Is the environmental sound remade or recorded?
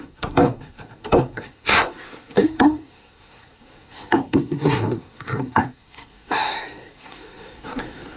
remade